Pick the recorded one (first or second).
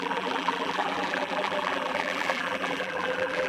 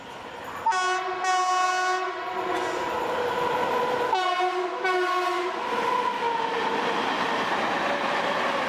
second